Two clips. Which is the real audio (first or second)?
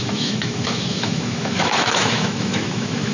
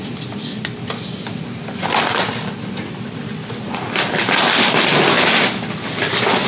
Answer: second